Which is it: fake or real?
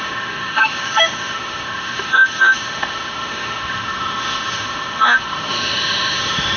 fake